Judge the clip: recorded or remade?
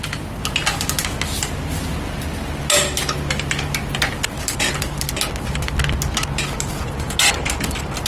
recorded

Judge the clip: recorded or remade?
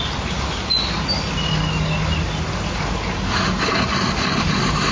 recorded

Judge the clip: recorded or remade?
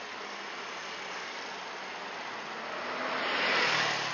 recorded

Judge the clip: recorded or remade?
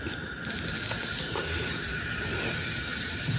recorded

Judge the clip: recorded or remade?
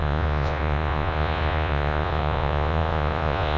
remade